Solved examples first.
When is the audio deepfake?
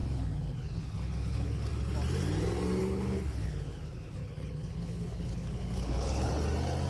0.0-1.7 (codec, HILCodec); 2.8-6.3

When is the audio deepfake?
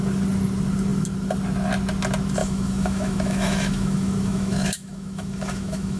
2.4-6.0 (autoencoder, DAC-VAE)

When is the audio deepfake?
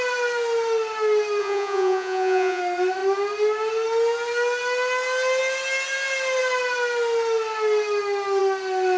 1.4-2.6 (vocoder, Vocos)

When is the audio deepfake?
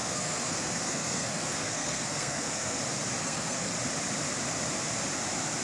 0.0-2.8 (codec, SNAC); 3.2-3.7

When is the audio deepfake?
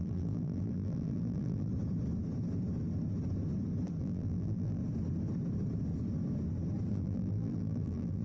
0.0-1.7 (vocoder, BigVGAN v2); 4.0-4.8; 6.9-8.2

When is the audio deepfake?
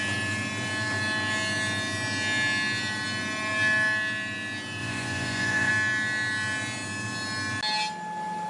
4.8-5.7 (vocoder, Vocos)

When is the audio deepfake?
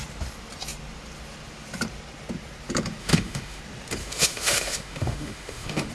3.0-3.6 (autoencoder, DAC-VAE); 4.0-5.9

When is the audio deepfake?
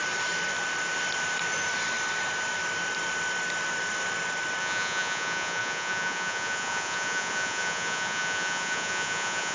4.6-9.5 (vocoder, Vocos)